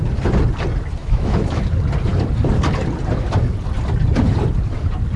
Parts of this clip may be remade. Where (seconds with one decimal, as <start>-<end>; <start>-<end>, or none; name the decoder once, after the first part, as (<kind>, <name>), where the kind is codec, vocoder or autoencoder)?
1.0-1.6 (autoencoder, DAC-VAE)